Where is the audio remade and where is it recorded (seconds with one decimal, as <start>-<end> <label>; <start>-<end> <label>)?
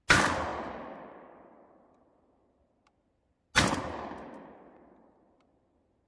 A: 0.0-6.1 recorded